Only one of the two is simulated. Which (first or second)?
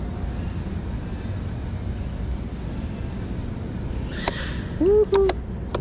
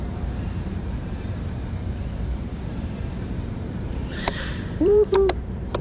second